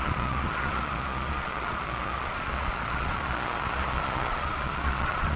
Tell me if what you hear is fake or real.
fake